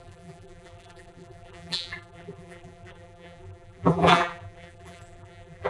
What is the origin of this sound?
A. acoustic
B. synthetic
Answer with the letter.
B